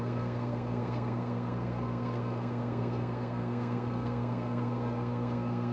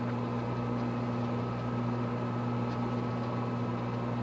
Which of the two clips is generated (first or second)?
first